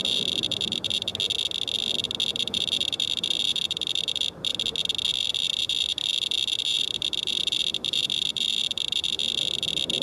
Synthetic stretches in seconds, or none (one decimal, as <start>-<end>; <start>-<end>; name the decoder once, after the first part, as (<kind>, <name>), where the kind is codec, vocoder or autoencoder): 0.0-1.1 (vocoder, BigVGAN v2); 2.3-4.5; 5.2-10.0

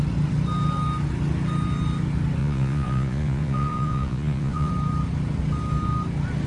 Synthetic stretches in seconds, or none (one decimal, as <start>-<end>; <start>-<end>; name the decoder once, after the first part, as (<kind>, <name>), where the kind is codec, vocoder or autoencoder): 2.4-4.7 (vocoder, Vocos)

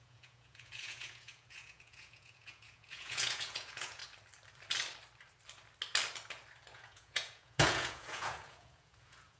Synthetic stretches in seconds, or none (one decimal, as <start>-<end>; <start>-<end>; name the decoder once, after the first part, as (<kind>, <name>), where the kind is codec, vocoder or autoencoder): 0.0-4.0 (vocoder, Vocos); 6.7-9.4

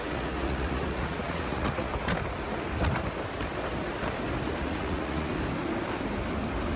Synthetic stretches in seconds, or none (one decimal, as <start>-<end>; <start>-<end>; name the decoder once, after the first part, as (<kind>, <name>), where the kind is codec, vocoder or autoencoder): 0.0-1.9 (vocoder, Vocos); 4.6-5.3

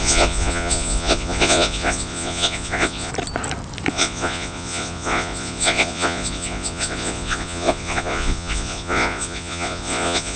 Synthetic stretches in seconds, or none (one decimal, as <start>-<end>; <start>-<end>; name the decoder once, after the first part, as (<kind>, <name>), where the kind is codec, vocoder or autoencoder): 0.0-3.1 (vocoder, Vocos); 3.9-10.4

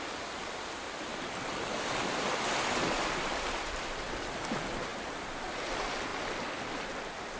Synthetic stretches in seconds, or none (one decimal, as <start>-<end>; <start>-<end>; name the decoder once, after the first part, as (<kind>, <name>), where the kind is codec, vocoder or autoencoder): none

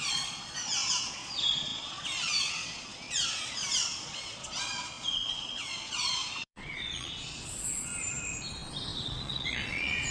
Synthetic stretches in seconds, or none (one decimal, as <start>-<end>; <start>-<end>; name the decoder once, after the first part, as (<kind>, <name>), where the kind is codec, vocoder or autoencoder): 0.0-7.9 (vocoder, Vocos); 9.0-10.1